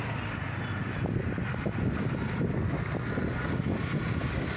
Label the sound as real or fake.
real